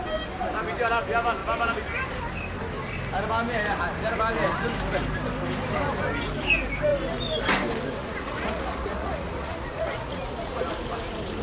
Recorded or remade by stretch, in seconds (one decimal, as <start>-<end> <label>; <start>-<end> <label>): 0.0-8.0 recorded; 8.0-10.7 remade; 10.7-11.4 recorded